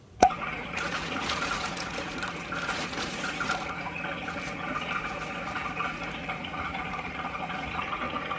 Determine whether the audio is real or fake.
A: fake